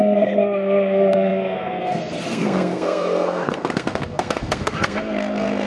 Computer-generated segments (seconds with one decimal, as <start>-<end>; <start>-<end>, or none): 0.0-5.7